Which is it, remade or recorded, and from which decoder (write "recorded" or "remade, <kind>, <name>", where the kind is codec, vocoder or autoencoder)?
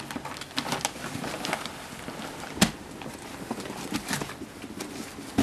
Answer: recorded